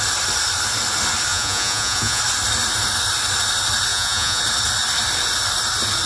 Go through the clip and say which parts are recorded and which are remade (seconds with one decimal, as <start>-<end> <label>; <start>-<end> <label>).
0.0-1.3 recorded; 1.3-2.2 remade; 2.2-3.9 recorded; 3.9-4.4 remade; 4.4-6.1 recorded